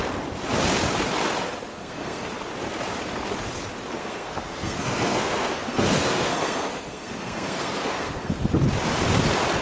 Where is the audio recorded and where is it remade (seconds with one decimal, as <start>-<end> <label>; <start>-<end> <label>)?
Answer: 0.0-1.7 recorded; 1.7-2.2 remade; 2.2-4.0 recorded; 4.0-8.3 remade; 8.3-9.6 recorded